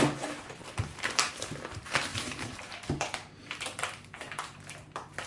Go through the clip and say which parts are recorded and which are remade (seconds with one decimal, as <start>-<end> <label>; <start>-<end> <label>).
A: 0.0-0.6 recorded; 0.6-1.3 remade; 1.3-2.1 recorded; 2.1-5.3 remade

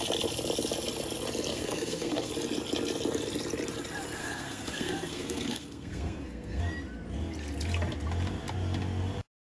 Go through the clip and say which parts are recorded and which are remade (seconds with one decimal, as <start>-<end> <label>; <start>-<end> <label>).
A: 0.0-1.5 recorded; 1.5-2.3 remade; 2.3-4.2 recorded; 4.2-6.6 remade; 6.6-9.5 recorded

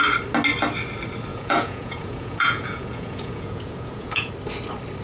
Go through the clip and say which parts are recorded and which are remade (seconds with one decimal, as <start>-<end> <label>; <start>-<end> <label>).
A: 0.0-1.3 recorded; 1.3-4.3 remade; 4.3-5.0 recorded

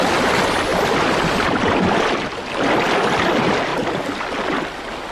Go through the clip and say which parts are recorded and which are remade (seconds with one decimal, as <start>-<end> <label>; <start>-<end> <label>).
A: 0.0-5.1 recorded